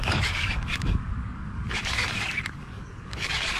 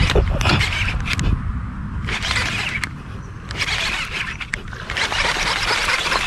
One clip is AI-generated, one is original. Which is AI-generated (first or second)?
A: first